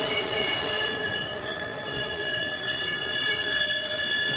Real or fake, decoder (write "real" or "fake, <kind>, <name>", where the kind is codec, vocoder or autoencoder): fake, vocoder, WaveNeXt